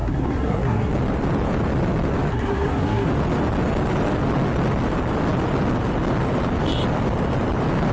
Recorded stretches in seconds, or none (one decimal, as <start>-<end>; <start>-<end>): 0.9-2.3; 3.1-7.9